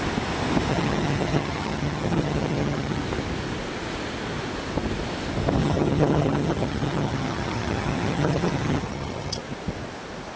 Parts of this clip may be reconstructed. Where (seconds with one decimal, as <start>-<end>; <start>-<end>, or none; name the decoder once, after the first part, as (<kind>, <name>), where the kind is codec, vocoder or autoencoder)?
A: 0.7-3.0 (vocoder, HiFi-GAN); 5.6-9.4